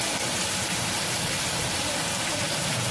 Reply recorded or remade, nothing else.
remade